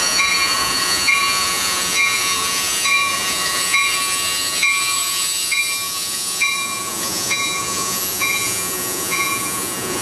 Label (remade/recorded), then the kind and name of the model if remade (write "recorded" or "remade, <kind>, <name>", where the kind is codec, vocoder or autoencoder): remade, vocoder, Vocos